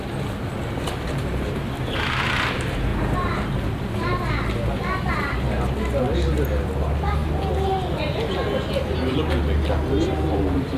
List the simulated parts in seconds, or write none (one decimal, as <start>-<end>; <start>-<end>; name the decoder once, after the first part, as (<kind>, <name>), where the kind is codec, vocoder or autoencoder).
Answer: none